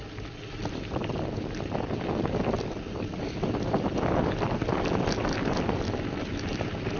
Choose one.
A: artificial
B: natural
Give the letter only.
B